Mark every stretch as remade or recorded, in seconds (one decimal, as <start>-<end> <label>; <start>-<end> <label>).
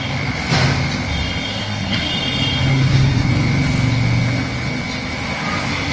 0.0-1.5 recorded; 1.5-2.1 remade; 2.1-2.7 recorded; 2.7-3.3 remade; 3.3-5.9 recorded